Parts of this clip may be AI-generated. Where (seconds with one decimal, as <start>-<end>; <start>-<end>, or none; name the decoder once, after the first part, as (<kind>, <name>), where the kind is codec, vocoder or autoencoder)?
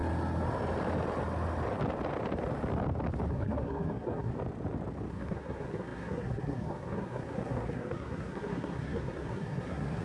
3.3-4.3 (codec, SNAC); 5.1-10.0